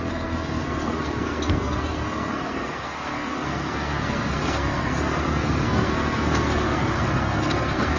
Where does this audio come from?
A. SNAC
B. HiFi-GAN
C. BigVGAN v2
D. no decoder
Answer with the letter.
A